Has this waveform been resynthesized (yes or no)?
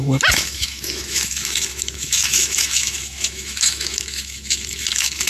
yes